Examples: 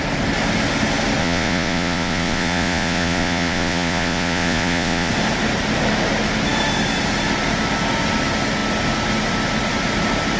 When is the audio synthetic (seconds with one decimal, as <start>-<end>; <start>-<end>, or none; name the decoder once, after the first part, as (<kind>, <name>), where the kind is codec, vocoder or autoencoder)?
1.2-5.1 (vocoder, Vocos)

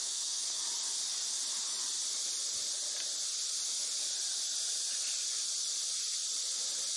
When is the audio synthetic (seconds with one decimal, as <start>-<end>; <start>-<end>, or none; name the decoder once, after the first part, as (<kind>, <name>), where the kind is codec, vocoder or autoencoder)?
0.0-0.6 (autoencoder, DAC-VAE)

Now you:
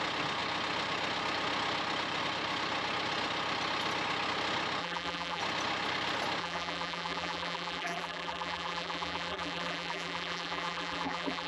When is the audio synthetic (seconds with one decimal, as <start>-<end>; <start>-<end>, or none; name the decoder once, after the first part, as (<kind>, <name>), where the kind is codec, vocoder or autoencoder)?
4.8-5.4 (vocoder, BigVGAN v2); 6.4-11.5

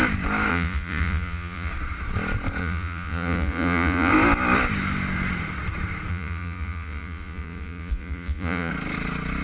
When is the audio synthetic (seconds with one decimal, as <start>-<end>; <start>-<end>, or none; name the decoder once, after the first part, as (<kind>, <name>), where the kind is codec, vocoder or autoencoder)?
0.5-1.7 (vocoder, Vocos); 2.6-4.1; 6.1-8.7

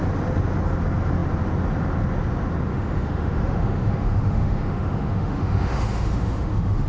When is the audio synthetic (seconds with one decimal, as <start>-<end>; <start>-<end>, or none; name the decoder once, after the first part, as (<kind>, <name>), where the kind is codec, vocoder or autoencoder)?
2.7-6.9 (autoencoder, DAC-VAE)